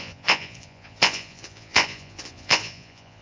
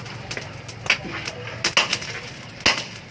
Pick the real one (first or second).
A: second